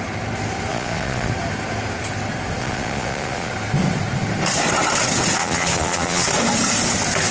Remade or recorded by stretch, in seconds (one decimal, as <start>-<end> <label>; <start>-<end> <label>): 0.0-0.7 recorded; 0.7-1.3 remade; 1.3-2.6 recorded; 2.6-3.5 remade; 3.5-5.4 recorded; 5.4-6.3 remade; 6.3-7.3 recorded